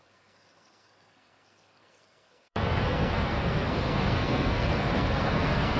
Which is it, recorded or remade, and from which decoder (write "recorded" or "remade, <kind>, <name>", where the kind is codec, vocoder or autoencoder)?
remade, codec, SNAC